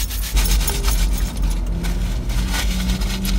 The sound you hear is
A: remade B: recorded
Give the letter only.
B